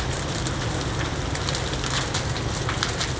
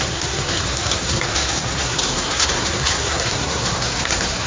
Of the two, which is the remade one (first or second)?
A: second